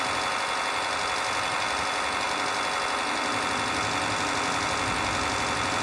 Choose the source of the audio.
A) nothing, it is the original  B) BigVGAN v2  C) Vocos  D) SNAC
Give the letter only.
A